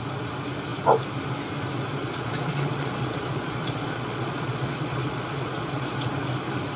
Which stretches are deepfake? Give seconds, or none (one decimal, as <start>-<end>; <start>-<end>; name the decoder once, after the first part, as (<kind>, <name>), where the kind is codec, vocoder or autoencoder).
2.0-6.1 (vocoder, Vocos)